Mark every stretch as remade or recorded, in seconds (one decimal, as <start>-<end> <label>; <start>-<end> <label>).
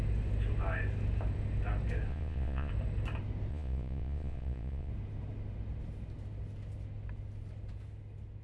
0.0-2.1 recorded; 2.1-2.7 remade; 2.7-3.5 recorded; 3.5-4.9 remade; 4.9-8.4 recorded